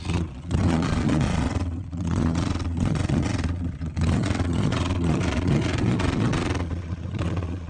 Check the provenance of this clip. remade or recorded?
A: remade